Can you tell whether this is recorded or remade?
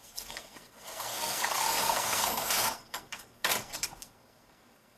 remade